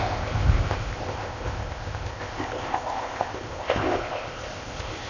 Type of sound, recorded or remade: remade